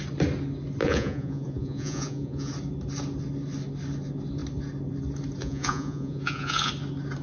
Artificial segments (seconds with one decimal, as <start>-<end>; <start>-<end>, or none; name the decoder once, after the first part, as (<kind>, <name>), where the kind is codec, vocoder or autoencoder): 0.8-2.5 (vocoder, Vocos); 5.4-6.7